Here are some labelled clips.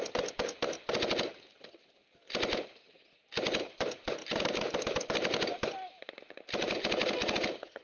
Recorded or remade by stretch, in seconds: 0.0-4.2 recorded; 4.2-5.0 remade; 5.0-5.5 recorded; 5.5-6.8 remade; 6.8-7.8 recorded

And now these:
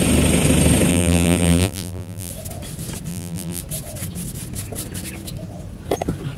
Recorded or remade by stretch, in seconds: 0.0-0.9 recorded; 0.9-2.3 remade; 2.3-3.1 recorded; 3.1-3.6 remade; 3.6-6.4 recorded